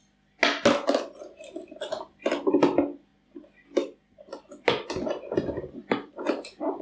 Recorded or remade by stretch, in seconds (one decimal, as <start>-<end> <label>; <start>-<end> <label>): 0.0-6.8 recorded